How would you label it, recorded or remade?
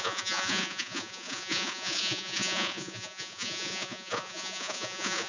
remade